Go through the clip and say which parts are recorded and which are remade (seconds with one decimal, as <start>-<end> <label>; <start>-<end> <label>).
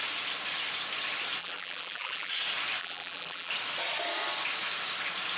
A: 0.0-1.4 recorded; 1.4-2.3 remade; 2.3-2.8 recorded; 2.8-3.5 remade; 3.5-5.4 recorded